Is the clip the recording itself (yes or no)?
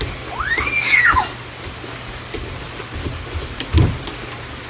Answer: yes